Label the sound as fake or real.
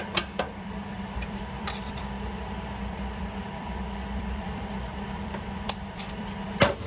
fake